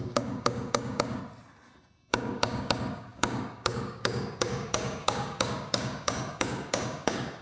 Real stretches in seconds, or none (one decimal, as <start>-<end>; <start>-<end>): 1.2-2.1